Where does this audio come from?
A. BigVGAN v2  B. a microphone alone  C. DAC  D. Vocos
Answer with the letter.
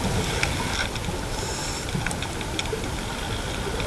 B